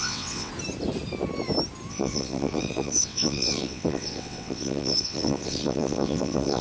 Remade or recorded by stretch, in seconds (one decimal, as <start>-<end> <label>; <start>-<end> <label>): 0.0-0.5 remade; 0.5-1.9 recorded; 1.9-6.6 remade